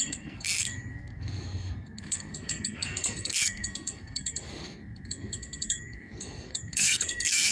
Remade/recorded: remade